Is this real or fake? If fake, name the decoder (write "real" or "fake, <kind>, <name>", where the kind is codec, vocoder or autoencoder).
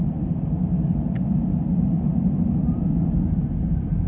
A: fake, vocoder, BigVGAN v2